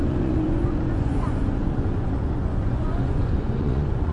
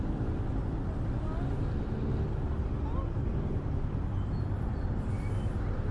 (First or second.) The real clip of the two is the second